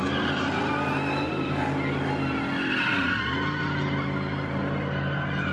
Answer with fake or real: real